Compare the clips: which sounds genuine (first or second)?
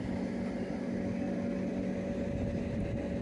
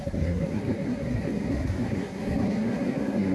first